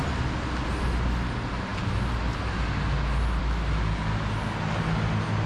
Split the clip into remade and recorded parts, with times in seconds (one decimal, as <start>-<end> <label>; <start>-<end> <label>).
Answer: 0.0-5.5 recorded